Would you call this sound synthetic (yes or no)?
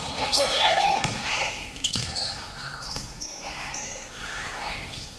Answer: yes